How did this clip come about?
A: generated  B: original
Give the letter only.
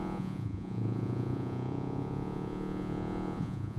A